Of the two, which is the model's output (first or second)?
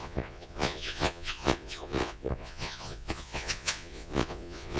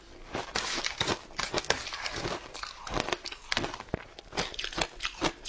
first